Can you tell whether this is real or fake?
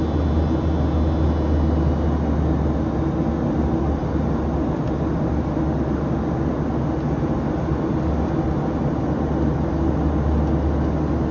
real